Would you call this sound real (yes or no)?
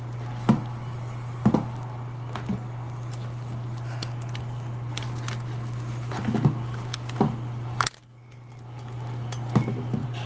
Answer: yes